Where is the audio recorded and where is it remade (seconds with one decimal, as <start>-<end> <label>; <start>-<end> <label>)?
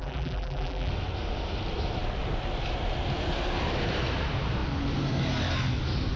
0.0-0.9 remade; 0.9-6.2 recorded